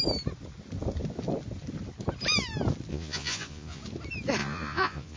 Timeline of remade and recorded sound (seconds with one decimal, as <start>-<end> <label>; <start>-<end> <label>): 0.0-2.9 recorded; 2.9-3.8 remade; 3.8-4.4 recorded; 4.4-5.2 remade